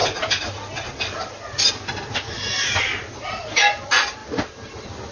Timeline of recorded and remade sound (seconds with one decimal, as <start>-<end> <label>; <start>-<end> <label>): 0.0-5.1 recorded

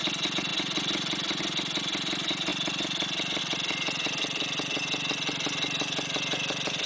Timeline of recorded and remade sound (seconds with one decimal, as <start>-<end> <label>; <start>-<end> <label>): 0.0-6.9 recorded